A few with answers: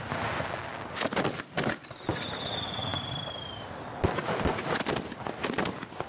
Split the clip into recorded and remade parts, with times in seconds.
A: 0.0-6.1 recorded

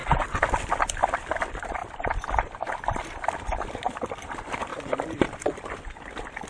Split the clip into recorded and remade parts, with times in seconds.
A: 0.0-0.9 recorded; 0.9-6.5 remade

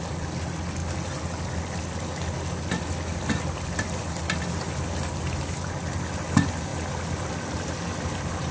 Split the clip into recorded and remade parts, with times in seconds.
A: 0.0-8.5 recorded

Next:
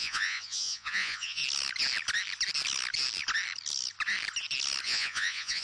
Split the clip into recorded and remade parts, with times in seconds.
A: 0.0-1.4 remade; 1.4-4.8 recorded; 4.8-5.6 remade

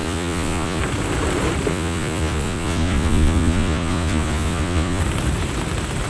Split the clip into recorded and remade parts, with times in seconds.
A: 0.0-0.8 remade; 0.8-1.7 recorded; 1.7-5.0 remade; 5.0-6.1 recorded